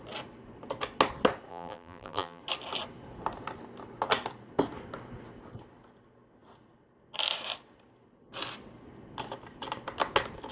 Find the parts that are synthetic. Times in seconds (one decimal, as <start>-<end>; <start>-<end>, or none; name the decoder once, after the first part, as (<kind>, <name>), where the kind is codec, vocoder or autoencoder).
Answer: 1.5-2.4 (vocoder, BigVGAN v2)